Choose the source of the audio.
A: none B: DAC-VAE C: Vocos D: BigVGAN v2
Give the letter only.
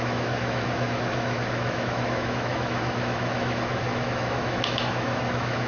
B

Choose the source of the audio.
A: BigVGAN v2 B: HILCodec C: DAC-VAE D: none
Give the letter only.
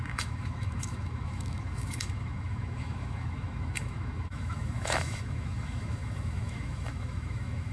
C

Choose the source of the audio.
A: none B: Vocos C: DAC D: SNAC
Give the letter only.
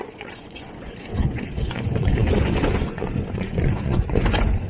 B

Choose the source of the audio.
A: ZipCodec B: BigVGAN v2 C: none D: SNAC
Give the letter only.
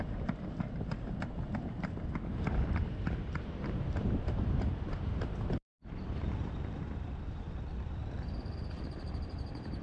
B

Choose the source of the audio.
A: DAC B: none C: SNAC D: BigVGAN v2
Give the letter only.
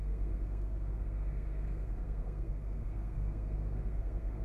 C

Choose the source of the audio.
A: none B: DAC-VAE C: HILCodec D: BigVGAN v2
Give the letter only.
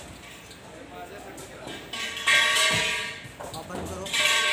A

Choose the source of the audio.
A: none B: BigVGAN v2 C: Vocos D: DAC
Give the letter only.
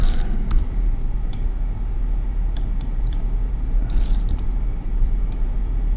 B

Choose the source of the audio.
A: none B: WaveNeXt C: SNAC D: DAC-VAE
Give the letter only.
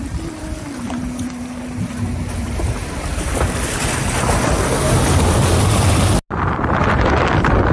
A